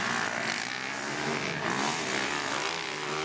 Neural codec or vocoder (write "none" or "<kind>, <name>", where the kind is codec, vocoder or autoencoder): none